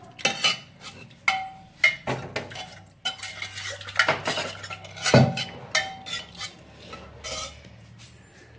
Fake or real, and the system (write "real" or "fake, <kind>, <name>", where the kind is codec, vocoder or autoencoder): real